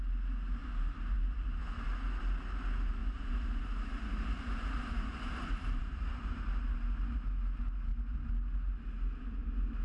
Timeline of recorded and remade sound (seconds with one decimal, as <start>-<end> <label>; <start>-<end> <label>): 0.0-0.6 recorded; 0.6-1.6 remade; 1.6-3.0 recorded; 3.0-6.4 remade; 6.4-9.8 recorded